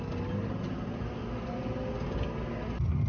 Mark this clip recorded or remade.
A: recorded